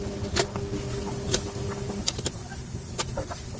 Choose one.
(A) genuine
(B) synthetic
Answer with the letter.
A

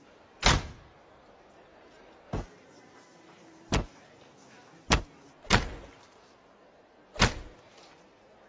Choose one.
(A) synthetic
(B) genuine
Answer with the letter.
B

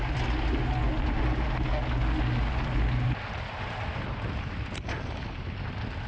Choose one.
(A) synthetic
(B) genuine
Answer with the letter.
B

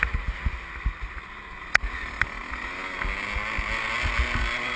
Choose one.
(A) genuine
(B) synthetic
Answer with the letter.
A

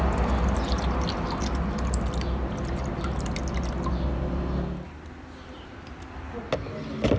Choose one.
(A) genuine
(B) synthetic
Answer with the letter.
A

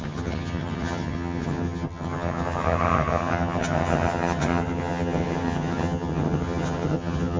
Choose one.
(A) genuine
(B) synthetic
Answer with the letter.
B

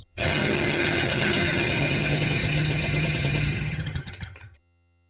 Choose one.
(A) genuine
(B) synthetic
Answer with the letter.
B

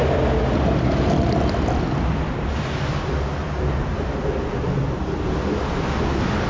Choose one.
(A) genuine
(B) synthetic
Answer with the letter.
A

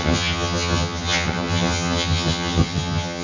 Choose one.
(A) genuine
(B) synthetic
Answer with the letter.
B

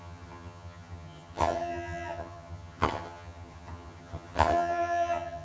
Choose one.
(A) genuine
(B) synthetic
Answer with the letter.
B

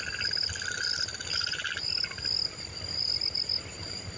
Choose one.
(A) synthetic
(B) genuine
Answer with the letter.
B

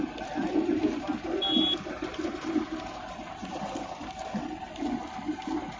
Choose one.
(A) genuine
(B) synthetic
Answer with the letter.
A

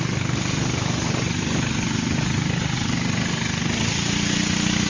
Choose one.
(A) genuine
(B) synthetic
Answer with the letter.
A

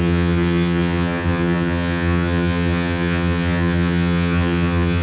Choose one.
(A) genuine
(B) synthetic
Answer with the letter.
B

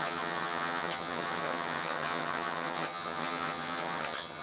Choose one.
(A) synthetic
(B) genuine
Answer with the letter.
A